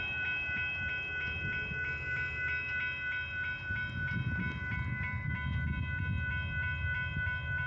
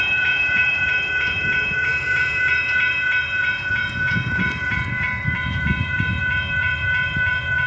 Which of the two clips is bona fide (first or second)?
first